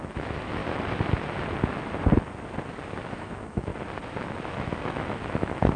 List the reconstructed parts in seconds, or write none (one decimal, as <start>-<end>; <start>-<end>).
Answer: 0.0-0.6; 3.1-3.7; 4.2-5.8